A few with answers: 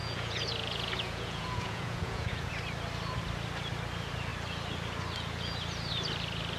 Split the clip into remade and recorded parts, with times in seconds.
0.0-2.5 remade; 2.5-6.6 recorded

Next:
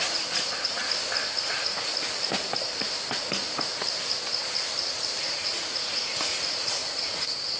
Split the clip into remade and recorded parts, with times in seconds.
0.0-0.8 remade; 0.8-1.4 recorded; 1.4-1.9 remade; 1.9-5.2 recorded; 5.2-7.6 remade

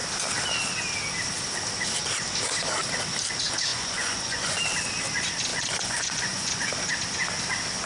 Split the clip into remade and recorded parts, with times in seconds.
0.0-3.7 recorded; 3.7-4.6 remade; 4.6-5.5 recorded; 5.5-6.7 remade; 6.7-7.9 recorded